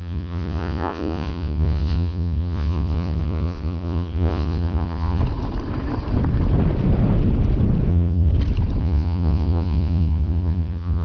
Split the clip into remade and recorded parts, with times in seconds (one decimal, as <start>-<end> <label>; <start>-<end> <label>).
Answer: 0.0-5.2 remade; 5.2-7.9 recorded; 7.9-8.3 remade; 8.3-8.8 recorded; 8.8-11.0 remade